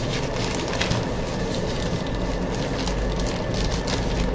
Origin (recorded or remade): recorded